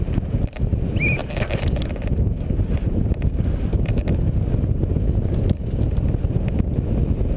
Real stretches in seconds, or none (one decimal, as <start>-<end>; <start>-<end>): 0.0-7.4